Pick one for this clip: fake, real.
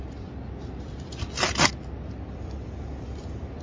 real